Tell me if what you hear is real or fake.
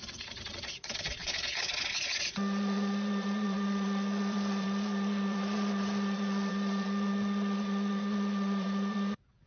fake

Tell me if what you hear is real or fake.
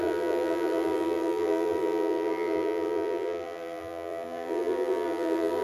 fake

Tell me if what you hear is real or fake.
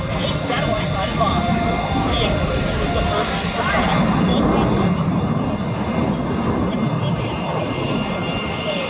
real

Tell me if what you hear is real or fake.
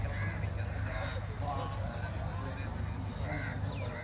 real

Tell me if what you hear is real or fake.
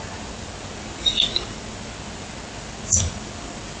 real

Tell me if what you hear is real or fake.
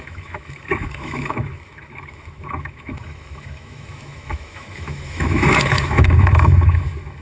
fake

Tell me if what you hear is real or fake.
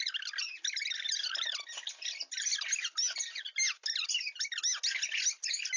real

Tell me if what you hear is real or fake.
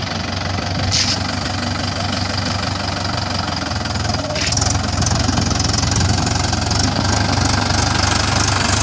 real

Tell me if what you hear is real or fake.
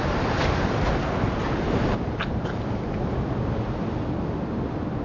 real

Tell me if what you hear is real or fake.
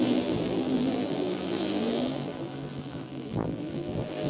fake